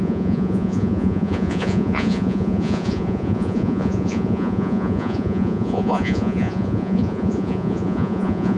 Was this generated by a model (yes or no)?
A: yes